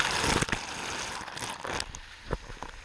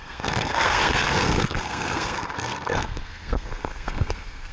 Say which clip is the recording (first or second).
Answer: first